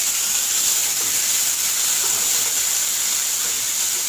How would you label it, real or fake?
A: real